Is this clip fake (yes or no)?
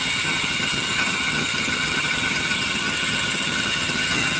yes